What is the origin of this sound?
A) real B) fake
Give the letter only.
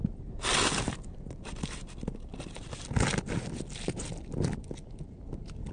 A